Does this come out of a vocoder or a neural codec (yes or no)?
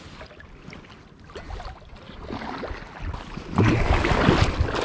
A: no